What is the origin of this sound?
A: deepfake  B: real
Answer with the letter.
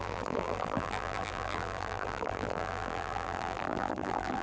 A